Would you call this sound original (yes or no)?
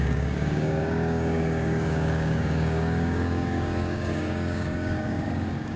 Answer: no